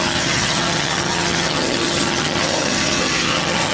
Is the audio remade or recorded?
remade